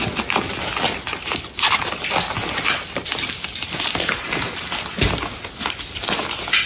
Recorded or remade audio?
recorded